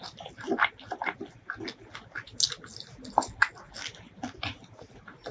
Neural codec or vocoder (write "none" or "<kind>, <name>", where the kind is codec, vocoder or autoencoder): none